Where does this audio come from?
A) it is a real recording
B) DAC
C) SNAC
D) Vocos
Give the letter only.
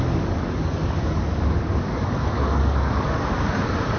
B